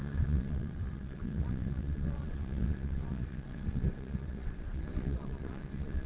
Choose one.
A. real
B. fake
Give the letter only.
B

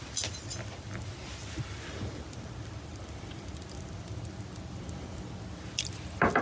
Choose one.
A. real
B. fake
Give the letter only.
B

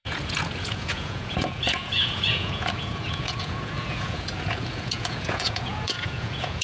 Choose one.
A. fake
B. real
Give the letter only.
A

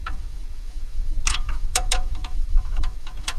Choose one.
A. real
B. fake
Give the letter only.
B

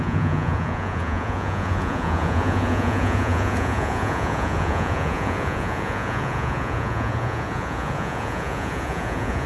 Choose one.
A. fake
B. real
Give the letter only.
A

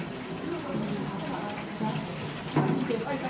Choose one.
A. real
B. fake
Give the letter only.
A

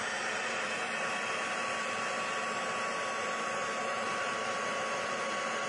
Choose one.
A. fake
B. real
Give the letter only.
B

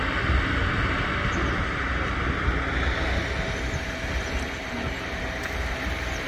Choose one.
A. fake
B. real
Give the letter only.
B